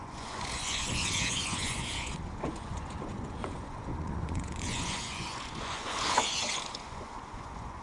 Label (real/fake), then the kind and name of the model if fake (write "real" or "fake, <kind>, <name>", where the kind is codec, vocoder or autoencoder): fake, vocoder, Vocos